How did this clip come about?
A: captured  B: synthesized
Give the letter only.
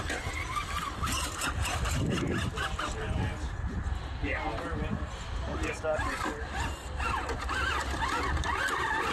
A